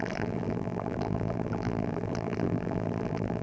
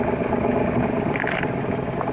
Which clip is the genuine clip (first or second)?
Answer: second